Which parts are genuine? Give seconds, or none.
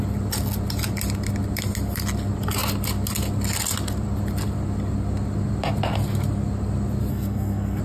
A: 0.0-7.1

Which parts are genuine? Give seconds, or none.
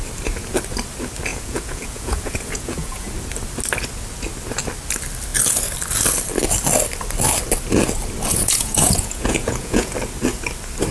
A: 0.0-1.3; 3.1-8.3; 9.9-10.9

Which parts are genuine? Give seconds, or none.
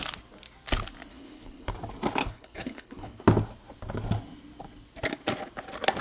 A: 0.0-1.1; 1.8-2.2; 3.2-6.0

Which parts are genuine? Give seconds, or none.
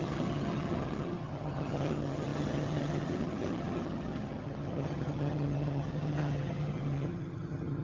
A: none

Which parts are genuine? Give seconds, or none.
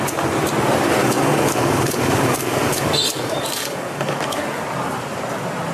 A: 0.0-1.0; 4.4-5.7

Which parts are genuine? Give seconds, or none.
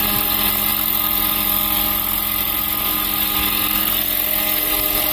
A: 0.0-5.1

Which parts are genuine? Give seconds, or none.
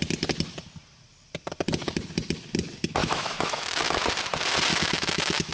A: 0.0-3.0; 4.0-4.7